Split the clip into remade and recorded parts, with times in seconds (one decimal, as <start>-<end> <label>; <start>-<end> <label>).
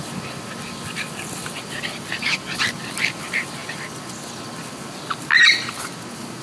0.0-6.4 recorded